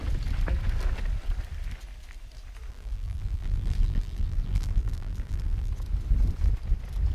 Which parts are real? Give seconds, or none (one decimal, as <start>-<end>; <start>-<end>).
0.0-2.7; 5.7-7.1